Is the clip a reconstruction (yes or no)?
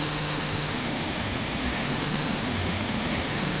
yes